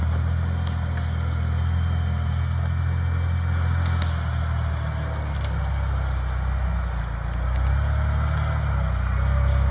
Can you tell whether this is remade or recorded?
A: recorded